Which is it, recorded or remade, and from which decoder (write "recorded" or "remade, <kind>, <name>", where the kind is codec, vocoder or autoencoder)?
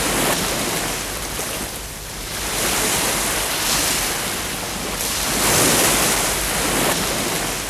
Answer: recorded